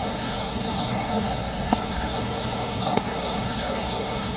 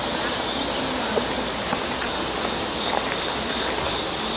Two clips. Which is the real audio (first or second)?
second